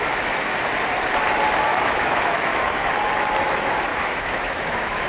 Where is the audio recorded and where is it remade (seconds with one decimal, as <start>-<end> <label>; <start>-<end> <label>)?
0.0-1.7 recorded; 1.7-2.9 remade; 2.9-3.9 recorded; 3.9-5.1 remade